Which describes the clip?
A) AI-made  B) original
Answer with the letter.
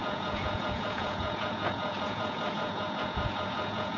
A